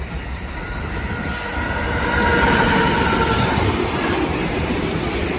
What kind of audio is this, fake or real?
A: real